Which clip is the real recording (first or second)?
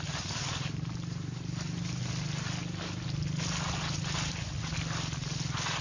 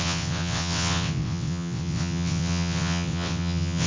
first